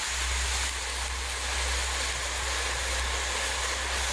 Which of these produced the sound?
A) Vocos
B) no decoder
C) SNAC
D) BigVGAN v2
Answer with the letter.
B